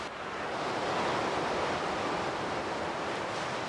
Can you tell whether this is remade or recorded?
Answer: recorded